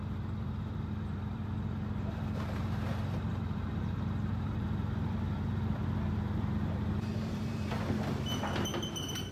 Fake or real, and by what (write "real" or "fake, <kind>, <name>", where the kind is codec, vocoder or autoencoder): fake, vocoder, BigVGAN v2